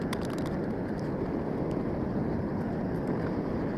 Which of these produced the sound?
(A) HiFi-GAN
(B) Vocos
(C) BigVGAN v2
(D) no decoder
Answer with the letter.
D